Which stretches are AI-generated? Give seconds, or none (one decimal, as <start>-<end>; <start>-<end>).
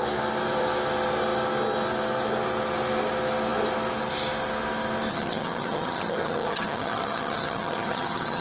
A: 5.1-8.4